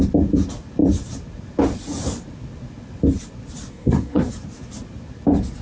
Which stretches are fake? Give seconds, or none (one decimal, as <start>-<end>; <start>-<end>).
3.7-4.3